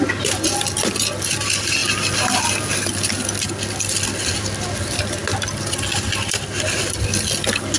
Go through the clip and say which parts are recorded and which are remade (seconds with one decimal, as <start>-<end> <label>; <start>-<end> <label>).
0.0-7.8 recorded